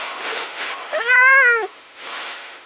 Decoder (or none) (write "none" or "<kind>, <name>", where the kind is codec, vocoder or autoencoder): autoencoder, DAC-VAE